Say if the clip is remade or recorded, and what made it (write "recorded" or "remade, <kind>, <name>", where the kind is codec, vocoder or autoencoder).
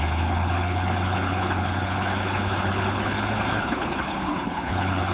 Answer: remade, codec, HILCodec